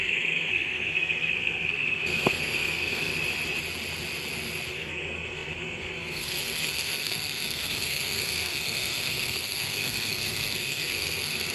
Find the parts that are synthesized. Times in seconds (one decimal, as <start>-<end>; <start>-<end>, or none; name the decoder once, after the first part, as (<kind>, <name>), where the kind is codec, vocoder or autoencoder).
0.0-3.1 (codec, SNAC); 4.7-11.5